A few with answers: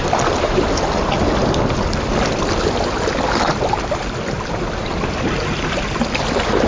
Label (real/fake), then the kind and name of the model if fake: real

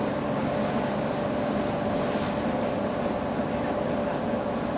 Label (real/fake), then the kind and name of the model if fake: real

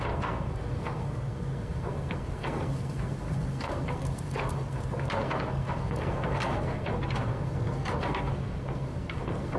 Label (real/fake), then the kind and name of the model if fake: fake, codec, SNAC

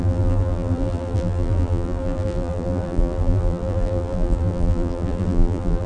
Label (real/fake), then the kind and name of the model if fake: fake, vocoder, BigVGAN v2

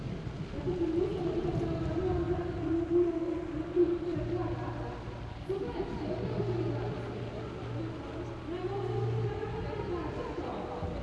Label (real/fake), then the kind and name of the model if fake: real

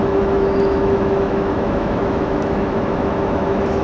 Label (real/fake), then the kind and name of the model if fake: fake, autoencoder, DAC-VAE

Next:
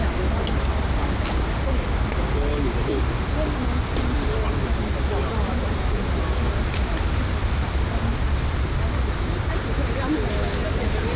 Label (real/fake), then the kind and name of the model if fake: real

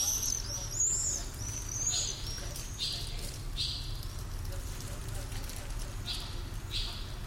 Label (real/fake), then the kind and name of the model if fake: real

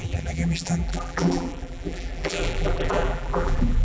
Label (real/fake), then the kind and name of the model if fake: fake, vocoder, BigVGAN v2